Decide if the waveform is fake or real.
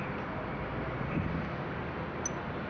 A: real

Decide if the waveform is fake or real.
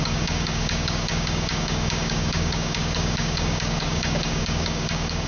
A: fake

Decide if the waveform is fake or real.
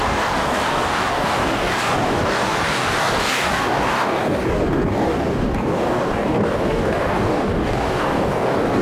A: fake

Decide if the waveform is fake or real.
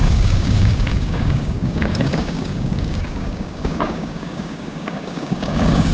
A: fake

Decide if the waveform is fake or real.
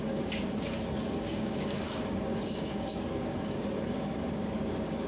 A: fake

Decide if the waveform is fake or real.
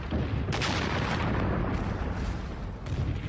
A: real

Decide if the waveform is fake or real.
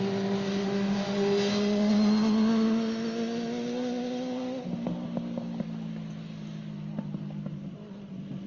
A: real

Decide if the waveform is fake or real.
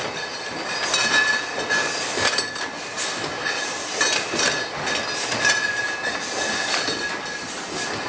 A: real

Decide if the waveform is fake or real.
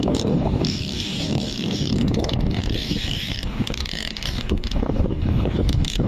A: fake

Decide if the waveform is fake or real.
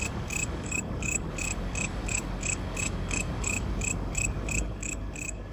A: fake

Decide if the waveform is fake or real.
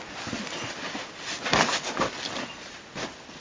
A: real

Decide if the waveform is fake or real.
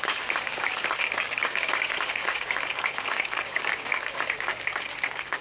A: fake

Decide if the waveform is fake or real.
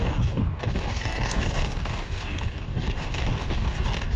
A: fake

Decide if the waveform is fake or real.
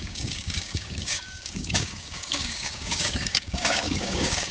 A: fake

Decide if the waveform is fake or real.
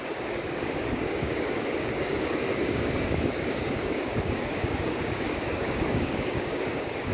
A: fake